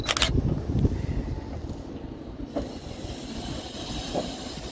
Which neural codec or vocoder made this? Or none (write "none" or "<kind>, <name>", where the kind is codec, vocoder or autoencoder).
none